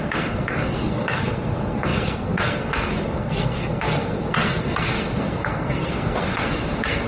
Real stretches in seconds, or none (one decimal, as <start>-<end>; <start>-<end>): none

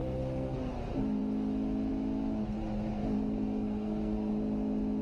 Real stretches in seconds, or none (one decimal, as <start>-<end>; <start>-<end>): 0.7-2.9; 4.3-5.0

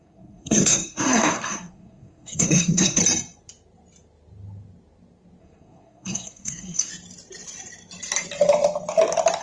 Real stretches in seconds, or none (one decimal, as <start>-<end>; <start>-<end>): 3.0-5.4; 6.9-9.4

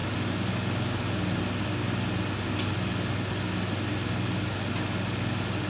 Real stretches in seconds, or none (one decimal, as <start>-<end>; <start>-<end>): 0.0-5.7

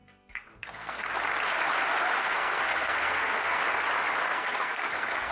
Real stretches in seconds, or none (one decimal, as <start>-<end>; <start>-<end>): 1.1-2.2; 3.6-4.3

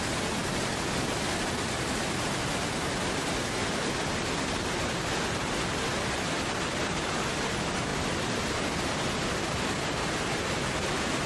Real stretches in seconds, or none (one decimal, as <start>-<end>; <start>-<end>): 0.0-11.3

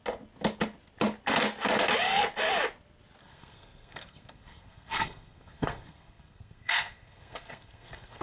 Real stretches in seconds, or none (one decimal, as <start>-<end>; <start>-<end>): 0.0-3.2

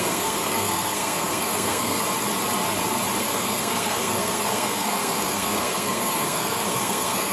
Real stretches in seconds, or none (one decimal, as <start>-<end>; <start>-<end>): 2.0-3.2